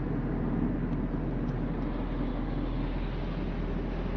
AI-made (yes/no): no